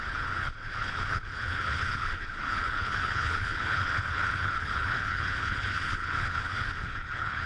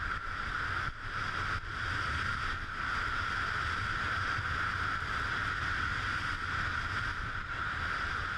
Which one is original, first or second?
second